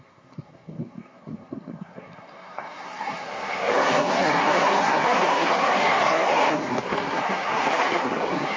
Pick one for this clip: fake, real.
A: fake